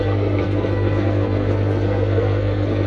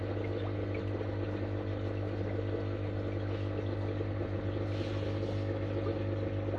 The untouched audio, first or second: second